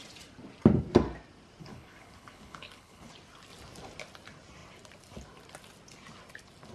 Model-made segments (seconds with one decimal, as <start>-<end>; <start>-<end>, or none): 1.6-3.1